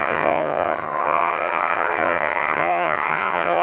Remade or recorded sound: remade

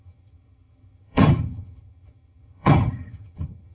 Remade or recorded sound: remade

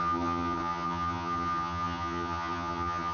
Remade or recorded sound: remade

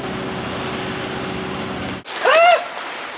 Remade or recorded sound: recorded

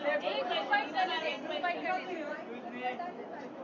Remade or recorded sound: recorded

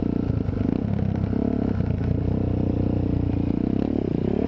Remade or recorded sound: recorded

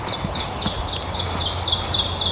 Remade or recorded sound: recorded